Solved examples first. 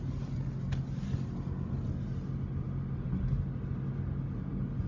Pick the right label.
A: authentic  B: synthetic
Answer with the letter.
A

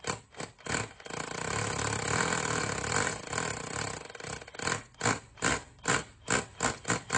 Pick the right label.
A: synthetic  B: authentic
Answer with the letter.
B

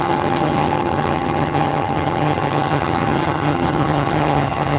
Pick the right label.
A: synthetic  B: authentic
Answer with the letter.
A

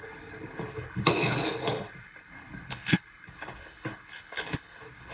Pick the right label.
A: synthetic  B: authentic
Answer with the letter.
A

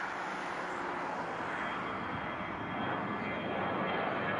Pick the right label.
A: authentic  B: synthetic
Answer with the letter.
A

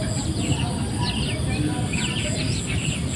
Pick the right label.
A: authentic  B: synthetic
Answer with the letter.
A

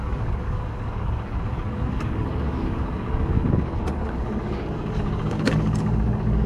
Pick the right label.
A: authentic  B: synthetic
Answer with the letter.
B